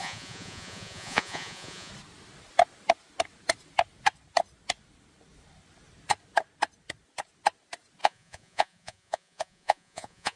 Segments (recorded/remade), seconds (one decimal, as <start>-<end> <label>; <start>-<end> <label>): 0.0-1.9 remade; 1.9-8.0 recorded; 8.0-10.4 remade